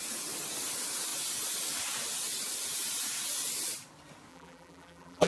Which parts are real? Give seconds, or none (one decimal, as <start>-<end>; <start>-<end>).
0.0-4.3